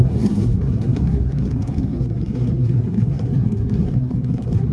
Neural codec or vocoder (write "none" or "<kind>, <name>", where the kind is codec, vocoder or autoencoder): codec, SNAC